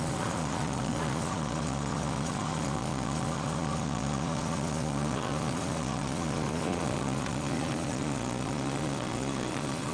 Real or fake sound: fake